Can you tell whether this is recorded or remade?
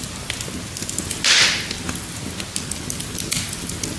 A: recorded